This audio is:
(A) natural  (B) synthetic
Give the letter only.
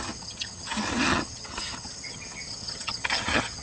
B